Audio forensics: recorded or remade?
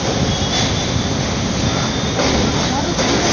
recorded